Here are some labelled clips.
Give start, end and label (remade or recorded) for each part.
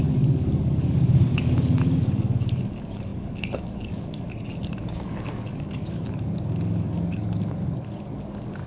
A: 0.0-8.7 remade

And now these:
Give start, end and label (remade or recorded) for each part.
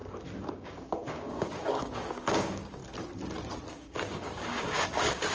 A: 0.0-0.5 recorded; 0.5-2.8 remade; 2.8-3.7 recorded; 3.7-5.3 remade